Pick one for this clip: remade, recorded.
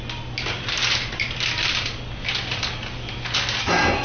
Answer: recorded